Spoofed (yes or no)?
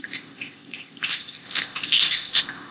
yes